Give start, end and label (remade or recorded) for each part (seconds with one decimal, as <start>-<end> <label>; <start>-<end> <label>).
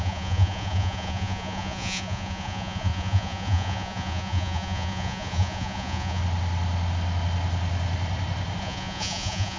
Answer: 0.0-6.2 remade; 6.2-8.6 recorded; 8.6-9.6 remade